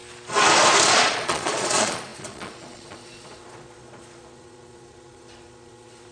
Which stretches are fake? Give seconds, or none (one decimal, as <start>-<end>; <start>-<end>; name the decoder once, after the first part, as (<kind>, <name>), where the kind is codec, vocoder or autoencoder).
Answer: 0.9-6.1 (vocoder, Vocos)